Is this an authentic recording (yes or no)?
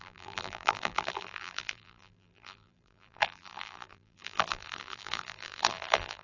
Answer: no